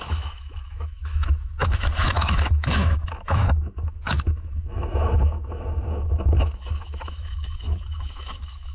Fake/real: fake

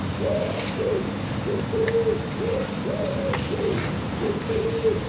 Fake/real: real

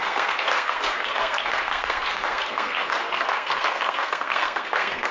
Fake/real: fake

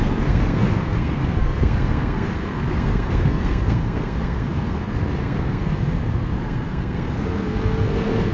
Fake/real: fake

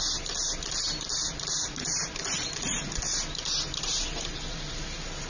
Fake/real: real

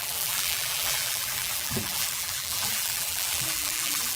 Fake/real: fake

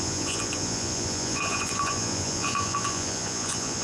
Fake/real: fake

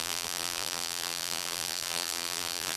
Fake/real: fake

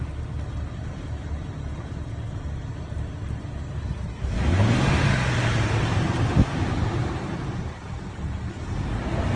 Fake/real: real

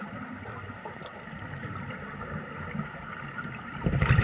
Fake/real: real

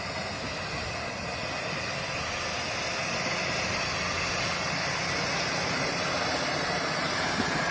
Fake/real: real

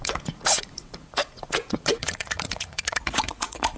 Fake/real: fake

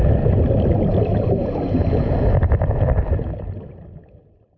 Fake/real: real